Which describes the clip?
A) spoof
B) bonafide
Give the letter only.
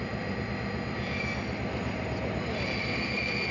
A